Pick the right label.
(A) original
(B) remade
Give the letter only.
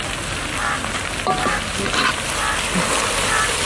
A